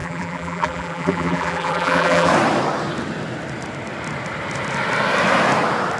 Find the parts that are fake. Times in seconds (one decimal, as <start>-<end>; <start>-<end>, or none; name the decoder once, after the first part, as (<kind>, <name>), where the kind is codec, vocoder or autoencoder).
0.0-2.3 (vocoder, BigVGAN v2)